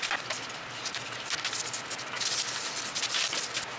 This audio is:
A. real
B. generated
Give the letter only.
A